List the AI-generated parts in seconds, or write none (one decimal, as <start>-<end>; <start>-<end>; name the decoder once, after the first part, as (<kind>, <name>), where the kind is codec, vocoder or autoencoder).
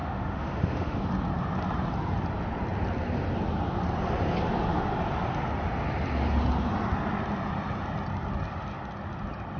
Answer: 0.0-1.0 (autoencoder, DAC-VAE)